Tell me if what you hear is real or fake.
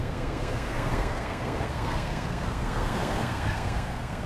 fake